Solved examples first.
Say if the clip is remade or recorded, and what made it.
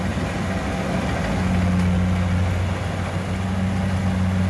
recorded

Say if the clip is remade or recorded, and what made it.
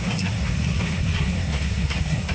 remade, codec, SNAC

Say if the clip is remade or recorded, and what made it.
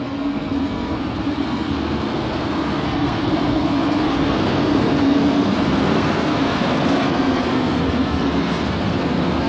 remade, codec, SNAC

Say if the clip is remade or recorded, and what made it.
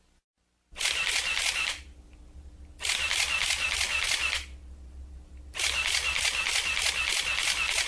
recorded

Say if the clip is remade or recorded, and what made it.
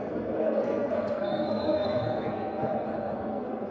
remade, codec, SNAC